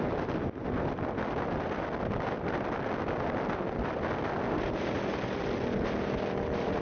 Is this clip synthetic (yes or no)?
no